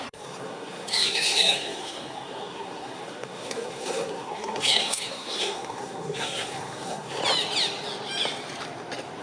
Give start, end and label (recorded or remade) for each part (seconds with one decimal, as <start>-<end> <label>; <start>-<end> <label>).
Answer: 0.0-7.2 remade; 7.2-9.2 recorded